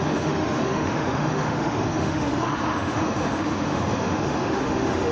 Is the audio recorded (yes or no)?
no